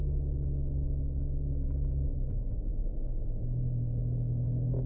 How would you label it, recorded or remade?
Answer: recorded